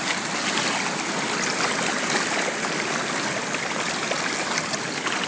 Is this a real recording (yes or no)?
yes